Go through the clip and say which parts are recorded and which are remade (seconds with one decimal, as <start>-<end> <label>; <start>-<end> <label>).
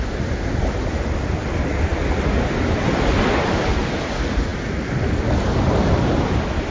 0.0-6.7 recorded